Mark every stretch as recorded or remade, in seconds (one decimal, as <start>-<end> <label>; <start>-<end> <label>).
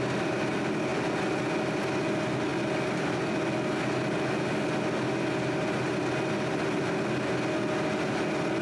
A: 0.0-8.6 recorded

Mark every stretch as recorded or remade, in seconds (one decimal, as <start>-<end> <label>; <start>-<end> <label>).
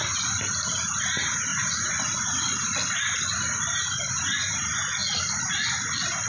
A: 0.0-6.3 recorded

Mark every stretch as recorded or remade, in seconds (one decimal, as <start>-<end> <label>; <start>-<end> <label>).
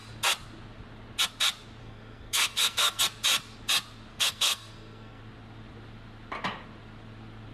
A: 0.0-1.8 recorded; 1.8-3.0 remade; 3.0-4.1 recorded; 4.1-5.2 remade; 5.2-7.5 recorded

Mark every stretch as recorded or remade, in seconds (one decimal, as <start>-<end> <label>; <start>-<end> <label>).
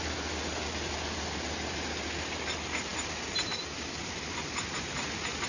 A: 0.0-5.5 recorded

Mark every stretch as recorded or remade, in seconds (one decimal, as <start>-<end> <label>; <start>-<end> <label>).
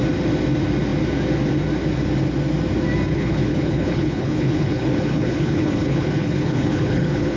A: 0.0-3.1 recorded; 3.1-7.4 remade